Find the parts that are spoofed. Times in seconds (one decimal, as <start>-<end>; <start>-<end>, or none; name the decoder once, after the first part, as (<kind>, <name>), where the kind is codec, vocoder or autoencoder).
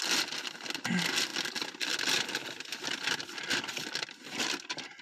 none